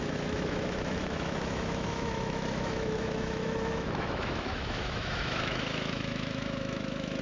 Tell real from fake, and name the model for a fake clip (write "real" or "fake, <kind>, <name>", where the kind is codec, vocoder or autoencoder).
fake, autoencoder, DAC-VAE